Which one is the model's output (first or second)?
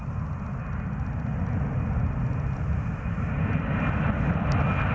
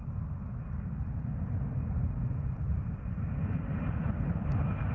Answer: second